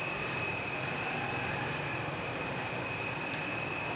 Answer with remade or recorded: recorded